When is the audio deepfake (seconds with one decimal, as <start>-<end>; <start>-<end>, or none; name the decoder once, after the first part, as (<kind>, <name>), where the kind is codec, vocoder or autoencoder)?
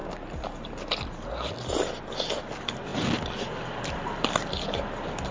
none